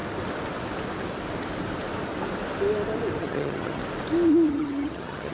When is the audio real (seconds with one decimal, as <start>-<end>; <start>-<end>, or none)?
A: 0.0-3.2; 3.8-4.5